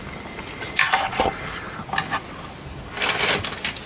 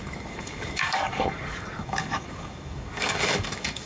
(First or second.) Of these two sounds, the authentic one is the first